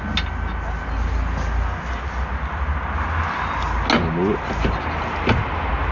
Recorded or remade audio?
recorded